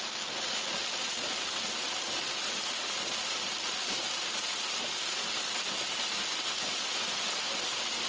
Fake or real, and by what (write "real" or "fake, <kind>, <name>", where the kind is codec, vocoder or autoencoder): real